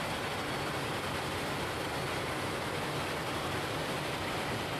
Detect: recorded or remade recorded